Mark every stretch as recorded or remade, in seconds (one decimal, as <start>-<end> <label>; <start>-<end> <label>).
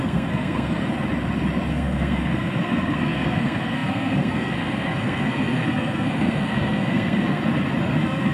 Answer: 0.0-0.8 remade; 0.8-1.7 recorded; 1.7-7.4 remade; 7.4-7.9 recorded; 7.9-8.3 remade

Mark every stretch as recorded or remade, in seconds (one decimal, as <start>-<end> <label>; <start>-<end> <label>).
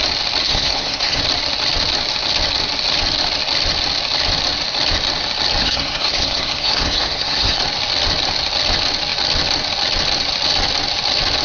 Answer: 0.0-0.4 recorded; 0.4-1.2 remade; 1.2-5.6 recorded; 5.6-7.6 remade; 7.6-11.4 recorded